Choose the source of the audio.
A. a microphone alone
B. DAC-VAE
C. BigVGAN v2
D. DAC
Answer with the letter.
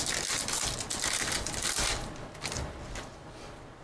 A